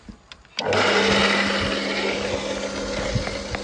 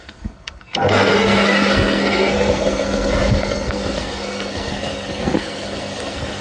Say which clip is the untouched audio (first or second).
first